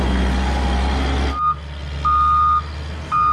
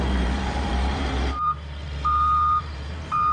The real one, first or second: first